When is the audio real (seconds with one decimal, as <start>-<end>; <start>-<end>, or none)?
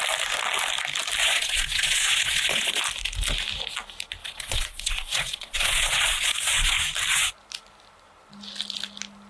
0.0-1.2; 2.8-4.2; 6.8-9.3